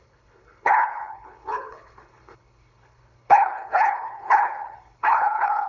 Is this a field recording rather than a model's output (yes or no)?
no